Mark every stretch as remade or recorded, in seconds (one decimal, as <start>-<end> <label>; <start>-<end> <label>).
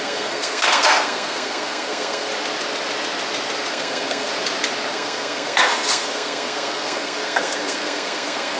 0.0-2.3 remade; 2.3-3.7 recorded; 3.7-4.3 remade; 4.3-4.9 recorded; 4.9-8.6 remade